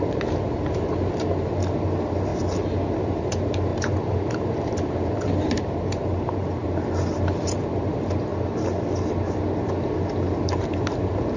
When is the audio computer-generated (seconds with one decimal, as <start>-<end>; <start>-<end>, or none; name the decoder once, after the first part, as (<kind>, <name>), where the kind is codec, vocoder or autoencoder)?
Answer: 0.0-2.3 (vocoder, BigVGAN v2); 3.0-8.3; 10.1-11.4